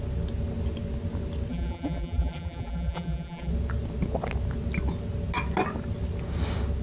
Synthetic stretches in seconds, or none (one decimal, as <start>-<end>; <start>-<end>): 1.5-3.5